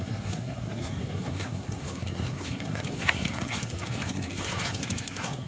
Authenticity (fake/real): fake